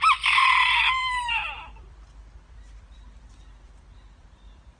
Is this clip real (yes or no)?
no